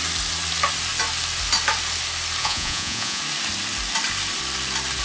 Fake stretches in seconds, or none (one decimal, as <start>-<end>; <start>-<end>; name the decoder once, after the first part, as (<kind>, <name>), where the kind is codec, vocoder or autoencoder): 2.4-3.2 (vocoder, Vocos)